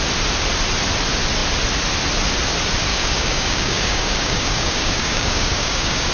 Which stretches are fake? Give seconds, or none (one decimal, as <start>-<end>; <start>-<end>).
2.9-6.1